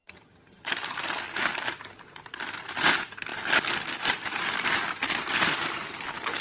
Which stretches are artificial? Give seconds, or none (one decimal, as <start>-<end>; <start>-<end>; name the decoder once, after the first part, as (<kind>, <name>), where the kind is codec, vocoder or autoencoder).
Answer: 0.0-0.7 (vocoder, HiFi-GAN)